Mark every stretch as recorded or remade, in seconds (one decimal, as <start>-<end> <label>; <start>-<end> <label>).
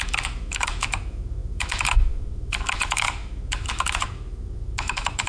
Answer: 0.0-5.3 remade